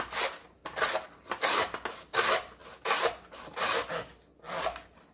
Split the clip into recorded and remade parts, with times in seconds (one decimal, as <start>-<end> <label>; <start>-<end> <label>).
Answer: 0.0-5.1 recorded